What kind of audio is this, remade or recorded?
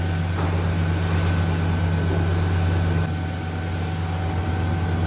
recorded